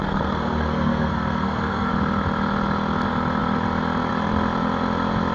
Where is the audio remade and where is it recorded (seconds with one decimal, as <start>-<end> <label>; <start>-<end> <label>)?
0.0-1.9 remade; 1.9-5.3 recorded